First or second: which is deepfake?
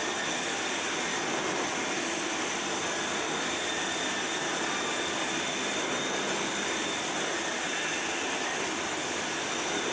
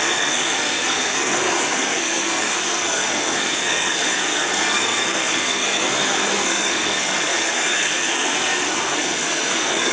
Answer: second